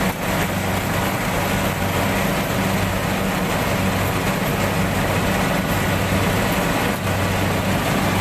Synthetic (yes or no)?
no